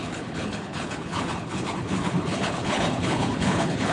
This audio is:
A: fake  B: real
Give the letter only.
A